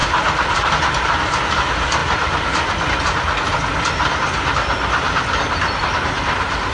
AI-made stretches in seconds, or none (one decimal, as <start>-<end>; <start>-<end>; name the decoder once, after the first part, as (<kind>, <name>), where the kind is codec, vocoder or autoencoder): none